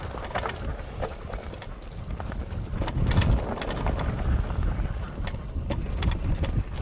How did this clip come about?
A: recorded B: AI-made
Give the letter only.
A